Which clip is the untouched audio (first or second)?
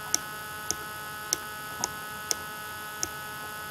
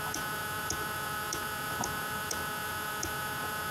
first